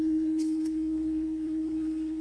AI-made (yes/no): yes